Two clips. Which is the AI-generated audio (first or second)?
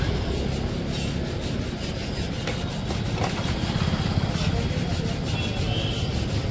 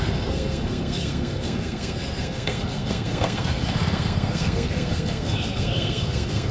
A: second